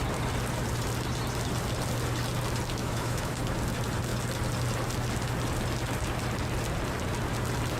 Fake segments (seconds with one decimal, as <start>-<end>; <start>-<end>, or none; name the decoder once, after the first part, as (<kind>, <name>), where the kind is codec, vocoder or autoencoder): 2.8-3.4 (autoencoder, DAC-VAE)